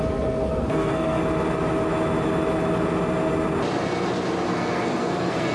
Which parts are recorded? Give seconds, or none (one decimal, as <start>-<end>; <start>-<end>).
1.2-4.5